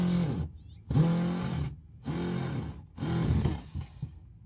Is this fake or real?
real